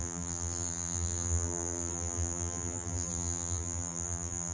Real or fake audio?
fake